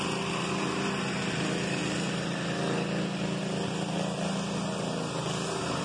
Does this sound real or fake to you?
real